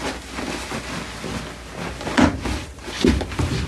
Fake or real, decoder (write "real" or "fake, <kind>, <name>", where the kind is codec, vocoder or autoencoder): real